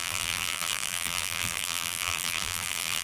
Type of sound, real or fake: fake